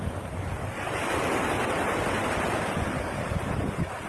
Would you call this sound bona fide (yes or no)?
yes